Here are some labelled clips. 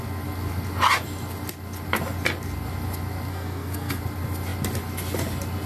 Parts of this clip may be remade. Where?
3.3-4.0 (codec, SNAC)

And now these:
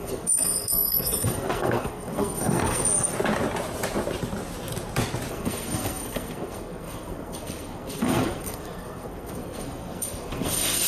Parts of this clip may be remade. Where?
0.0-3.1 (codec, SNAC); 5.3-10.9

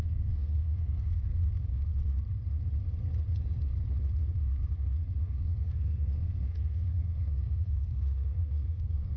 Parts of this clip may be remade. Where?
0.0-1.9 (codec, SNAC); 5.2-9.2

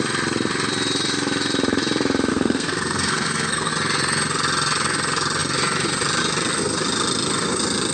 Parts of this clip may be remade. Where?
2.3-3.7 (codec, SNAC)

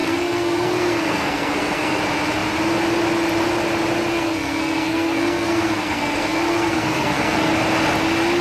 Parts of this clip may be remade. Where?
0.0-2.0 (codec, SNAC); 4.1-7.5

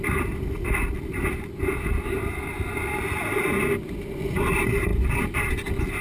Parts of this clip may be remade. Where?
none

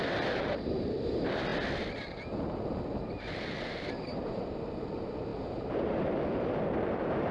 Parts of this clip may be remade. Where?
none